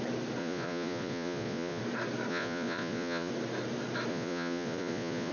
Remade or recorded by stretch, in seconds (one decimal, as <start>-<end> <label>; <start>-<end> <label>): 0.0-0.4 recorded; 0.4-1.8 remade; 1.8-2.3 recorded; 2.3-3.3 remade; 3.3-4.1 recorded; 4.1-5.3 remade